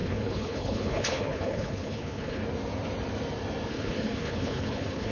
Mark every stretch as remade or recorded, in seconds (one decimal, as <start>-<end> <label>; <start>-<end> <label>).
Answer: 0.0-2.4 remade; 2.4-3.7 recorded; 3.7-5.1 remade